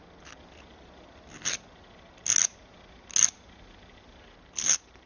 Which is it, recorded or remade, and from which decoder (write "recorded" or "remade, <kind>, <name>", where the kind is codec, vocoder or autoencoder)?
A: recorded